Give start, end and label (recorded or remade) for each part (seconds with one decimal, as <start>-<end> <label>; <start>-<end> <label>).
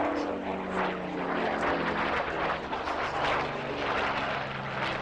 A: 0.0-5.0 recorded